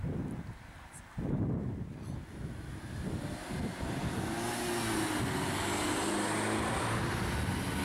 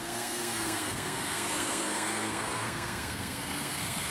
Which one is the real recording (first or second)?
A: first